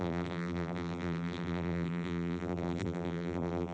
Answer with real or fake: fake